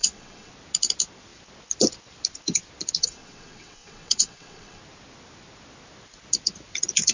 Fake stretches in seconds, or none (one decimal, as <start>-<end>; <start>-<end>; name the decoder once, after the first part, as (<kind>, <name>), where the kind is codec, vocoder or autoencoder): 0.0-0.5 (vocoder, WaveNeXt); 3.0-4.8